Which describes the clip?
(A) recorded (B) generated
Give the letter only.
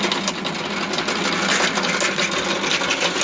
A